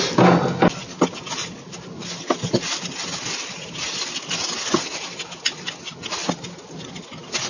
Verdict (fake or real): real